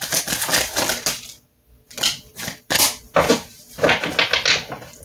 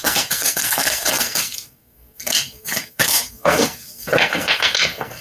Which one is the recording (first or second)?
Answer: first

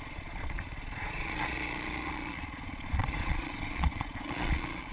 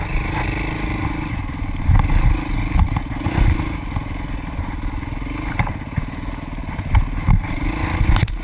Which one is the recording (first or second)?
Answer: second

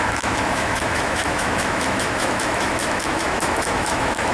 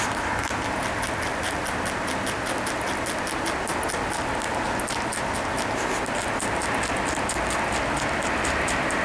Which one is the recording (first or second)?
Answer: second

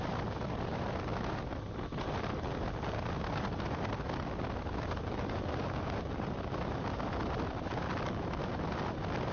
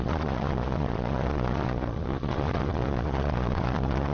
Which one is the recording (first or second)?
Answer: first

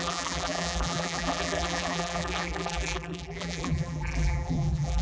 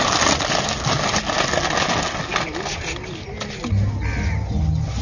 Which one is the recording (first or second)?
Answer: second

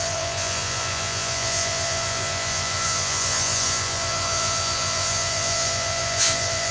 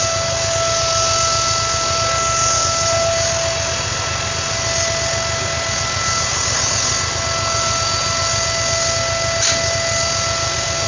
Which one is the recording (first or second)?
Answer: second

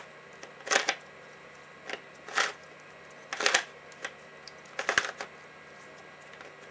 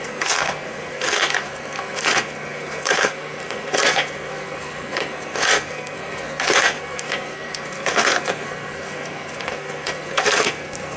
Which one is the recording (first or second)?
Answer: first